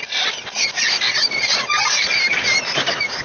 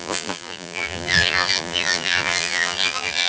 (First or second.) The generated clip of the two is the second